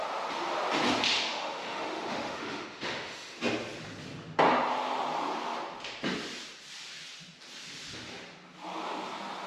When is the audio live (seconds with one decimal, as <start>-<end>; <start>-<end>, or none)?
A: 0.0-1.2; 3.4-9.5